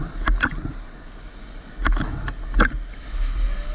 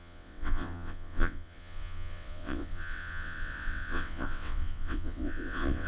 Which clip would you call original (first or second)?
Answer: first